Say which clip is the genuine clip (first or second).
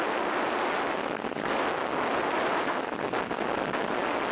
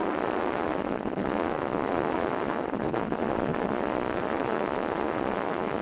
first